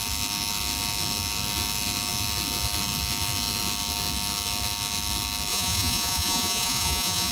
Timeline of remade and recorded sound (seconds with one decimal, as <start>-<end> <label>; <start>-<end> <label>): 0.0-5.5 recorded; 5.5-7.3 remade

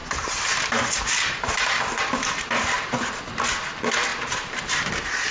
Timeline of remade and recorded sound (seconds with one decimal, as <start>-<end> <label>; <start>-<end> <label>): 0.0-3.2 remade; 3.2-4.1 recorded; 4.1-4.6 remade; 4.6-5.3 recorded

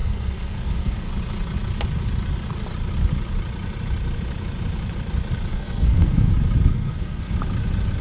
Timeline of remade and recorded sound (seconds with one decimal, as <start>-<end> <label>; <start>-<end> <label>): 0.0-1.1 remade; 1.1-5.5 recorded; 5.5-6.3 remade; 6.3-6.7 recorded; 6.7-7.3 remade; 7.3-8.0 recorded

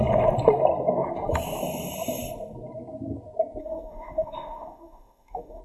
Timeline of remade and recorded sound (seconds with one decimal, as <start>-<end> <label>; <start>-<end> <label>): 0.0-3.6 recorded; 3.6-5.6 remade

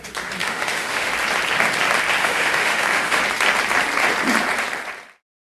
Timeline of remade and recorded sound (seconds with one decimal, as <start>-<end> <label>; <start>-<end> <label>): 0.0-0.4 recorded; 0.4-1.1 remade; 1.1-2.2 recorded; 2.2-3.2 remade; 3.2-5.6 recorded

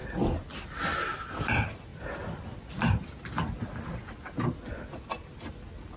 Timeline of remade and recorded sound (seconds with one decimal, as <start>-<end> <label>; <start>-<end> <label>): 0.0-6.0 recorded

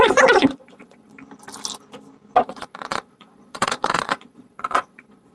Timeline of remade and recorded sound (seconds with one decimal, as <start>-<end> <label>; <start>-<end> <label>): 0.0-1.1 remade; 1.1-2.4 recorded; 2.4-5.3 remade

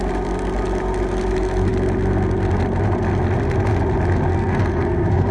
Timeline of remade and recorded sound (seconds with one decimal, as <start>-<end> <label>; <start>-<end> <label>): 0.0-4.3 recorded; 4.3-5.3 remade